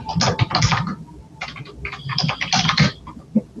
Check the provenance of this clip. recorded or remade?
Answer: recorded